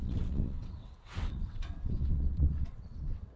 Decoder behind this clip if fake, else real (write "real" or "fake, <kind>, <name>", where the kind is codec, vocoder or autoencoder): fake, vocoder, WaveNeXt